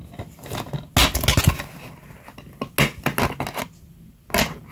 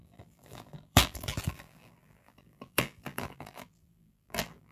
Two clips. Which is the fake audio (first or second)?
second